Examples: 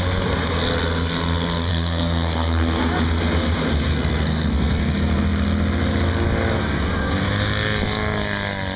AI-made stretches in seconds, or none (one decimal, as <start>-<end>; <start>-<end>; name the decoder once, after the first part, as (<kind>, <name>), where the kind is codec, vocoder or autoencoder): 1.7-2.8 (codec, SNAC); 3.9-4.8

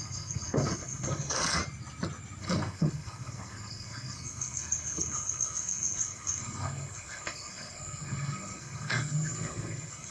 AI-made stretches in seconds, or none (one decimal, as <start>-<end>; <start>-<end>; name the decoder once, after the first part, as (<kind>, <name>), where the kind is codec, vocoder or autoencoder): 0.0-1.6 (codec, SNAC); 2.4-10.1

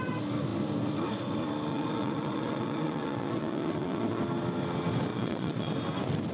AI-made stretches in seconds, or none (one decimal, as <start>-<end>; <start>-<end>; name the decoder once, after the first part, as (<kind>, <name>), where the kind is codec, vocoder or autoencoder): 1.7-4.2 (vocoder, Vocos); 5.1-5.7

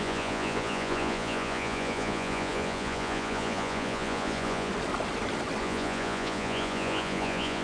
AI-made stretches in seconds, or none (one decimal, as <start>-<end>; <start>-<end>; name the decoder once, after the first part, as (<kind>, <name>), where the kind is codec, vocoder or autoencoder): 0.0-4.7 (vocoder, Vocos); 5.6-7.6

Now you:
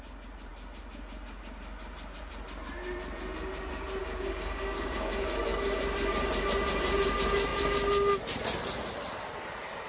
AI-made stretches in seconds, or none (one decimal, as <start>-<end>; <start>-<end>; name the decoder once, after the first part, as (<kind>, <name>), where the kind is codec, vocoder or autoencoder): 4.0-5.8 (codec, DAC)

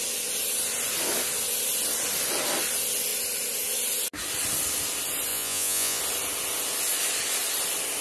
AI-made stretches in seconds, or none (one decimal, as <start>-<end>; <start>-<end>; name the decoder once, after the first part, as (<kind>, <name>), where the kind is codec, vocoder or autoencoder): 5.3-6.0 (vocoder, Vocos)

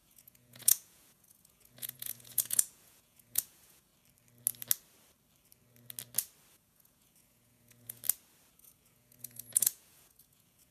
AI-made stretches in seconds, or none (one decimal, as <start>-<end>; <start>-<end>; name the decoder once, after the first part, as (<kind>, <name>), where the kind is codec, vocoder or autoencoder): 0.0-3.9 (vocoder, Vocos); 6.5-8.0; 8.5-10.7